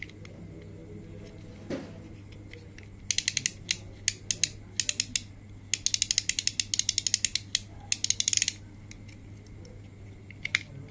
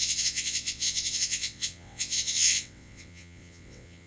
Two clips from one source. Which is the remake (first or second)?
second